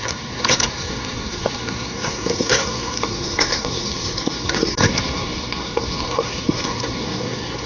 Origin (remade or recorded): remade